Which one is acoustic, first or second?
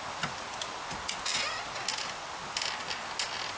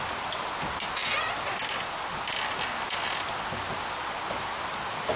second